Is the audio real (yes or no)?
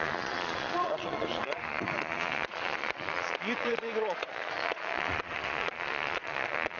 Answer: no